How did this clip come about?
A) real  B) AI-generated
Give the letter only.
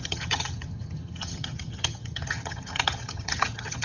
B